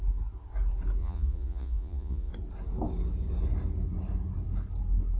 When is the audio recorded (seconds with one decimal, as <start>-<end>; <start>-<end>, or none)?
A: 0.0-1.0; 2.3-5.2